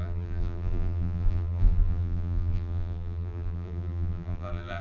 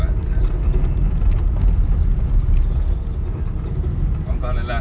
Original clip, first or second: second